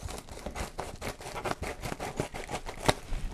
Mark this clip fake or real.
real